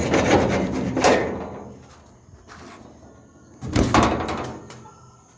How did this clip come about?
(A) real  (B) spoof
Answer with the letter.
A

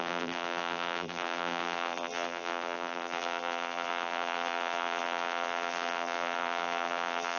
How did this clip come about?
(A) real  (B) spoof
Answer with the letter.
B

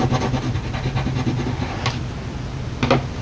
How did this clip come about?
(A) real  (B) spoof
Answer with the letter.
A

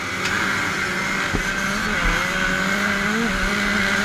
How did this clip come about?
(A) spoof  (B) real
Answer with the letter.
B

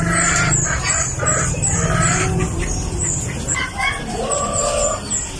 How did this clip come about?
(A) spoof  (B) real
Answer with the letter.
B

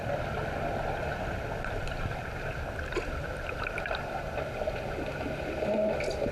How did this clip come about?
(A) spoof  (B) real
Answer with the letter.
B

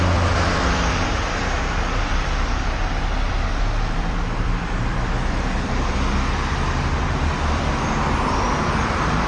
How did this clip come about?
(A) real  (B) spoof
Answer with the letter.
B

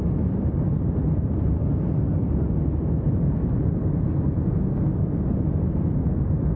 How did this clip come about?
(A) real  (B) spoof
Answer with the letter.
A